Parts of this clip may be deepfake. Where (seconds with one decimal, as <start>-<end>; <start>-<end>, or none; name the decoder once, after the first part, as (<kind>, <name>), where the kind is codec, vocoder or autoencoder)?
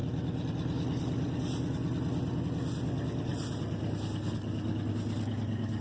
none